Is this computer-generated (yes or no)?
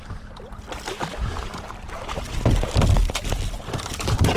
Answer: no